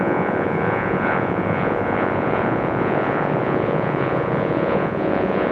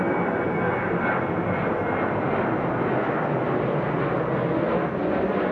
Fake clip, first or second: first